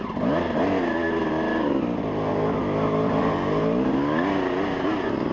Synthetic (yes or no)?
no